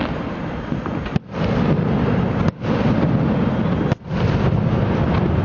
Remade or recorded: recorded